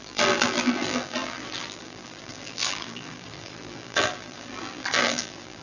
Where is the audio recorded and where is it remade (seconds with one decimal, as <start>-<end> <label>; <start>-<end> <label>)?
0.0-5.6 remade